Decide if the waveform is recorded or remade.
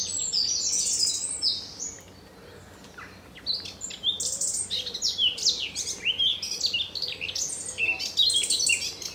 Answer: recorded